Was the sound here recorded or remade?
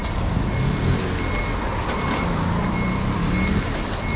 recorded